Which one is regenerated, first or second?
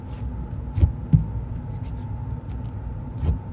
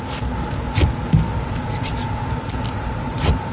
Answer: second